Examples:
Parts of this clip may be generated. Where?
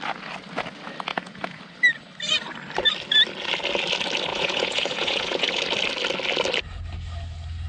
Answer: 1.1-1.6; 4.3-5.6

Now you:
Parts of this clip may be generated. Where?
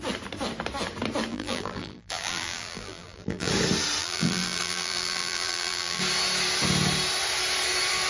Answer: 1.3-3.5; 4.0-6.0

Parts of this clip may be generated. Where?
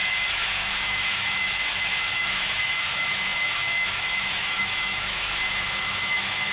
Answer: 0.0-6.5